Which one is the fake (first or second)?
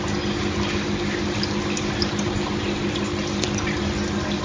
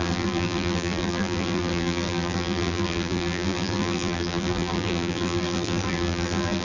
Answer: second